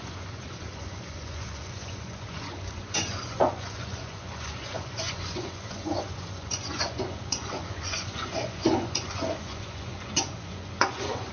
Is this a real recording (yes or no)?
no